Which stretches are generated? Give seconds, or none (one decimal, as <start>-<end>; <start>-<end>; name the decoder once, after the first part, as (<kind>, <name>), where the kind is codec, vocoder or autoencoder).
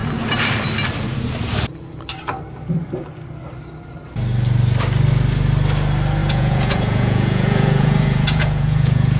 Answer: 6.2-9.2 (vocoder, Vocos)